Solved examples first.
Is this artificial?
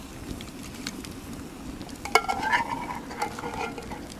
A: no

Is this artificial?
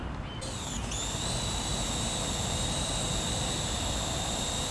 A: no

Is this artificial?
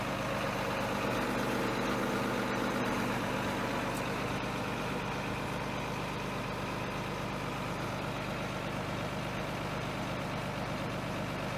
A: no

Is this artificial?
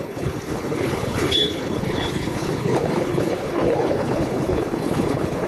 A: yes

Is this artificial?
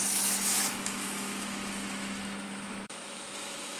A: yes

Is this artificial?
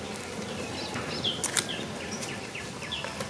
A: no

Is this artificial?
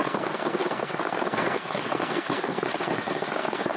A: yes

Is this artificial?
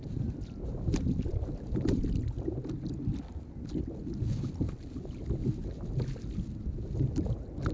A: no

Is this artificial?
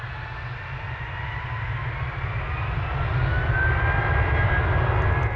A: no